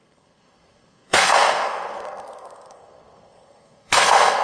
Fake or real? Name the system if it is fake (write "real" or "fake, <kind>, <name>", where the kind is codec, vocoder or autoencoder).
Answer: fake, codec, SNAC